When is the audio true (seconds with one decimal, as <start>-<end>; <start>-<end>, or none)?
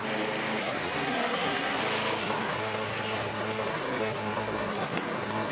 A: 0.0-0.6; 1.8-2.2